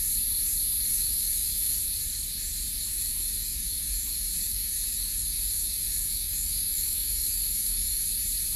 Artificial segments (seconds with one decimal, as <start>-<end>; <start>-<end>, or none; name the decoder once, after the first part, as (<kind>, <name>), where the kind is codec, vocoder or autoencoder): 0.9-1.8 (codec, DAC); 2.9-8.1